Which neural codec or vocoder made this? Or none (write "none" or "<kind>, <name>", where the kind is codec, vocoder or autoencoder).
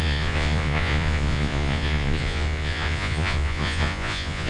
vocoder, Vocos